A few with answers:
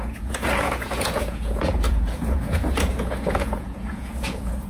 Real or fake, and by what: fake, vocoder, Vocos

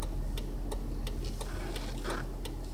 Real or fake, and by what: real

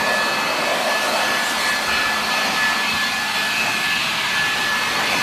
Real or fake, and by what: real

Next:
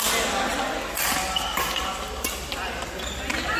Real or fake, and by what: real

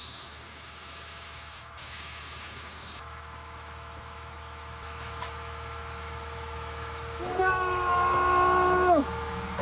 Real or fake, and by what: fake, autoencoder, DAC-VAE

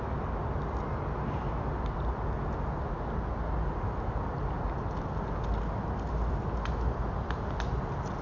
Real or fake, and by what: real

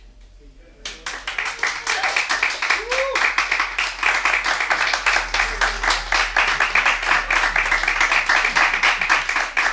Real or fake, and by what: real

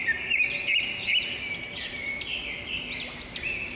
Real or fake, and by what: real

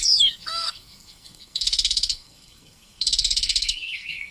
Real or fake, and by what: fake, codec, SNAC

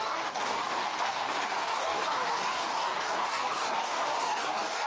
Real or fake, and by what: fake, codec, DAC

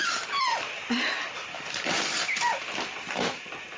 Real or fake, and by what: real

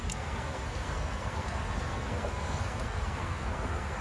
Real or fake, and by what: fake, codec, SNAC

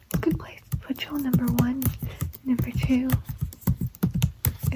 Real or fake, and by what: real